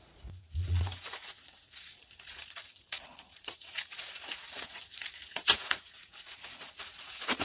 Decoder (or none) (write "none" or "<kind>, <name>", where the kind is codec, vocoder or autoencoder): vocoder, Vocos